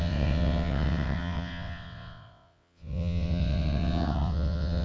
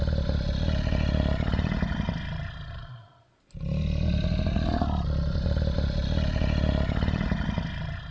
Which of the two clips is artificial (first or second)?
first